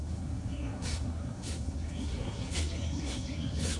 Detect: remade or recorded remade